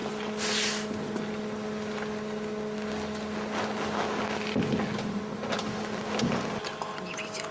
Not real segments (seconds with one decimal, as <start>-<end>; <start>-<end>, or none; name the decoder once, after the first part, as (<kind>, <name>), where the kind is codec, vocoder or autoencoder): none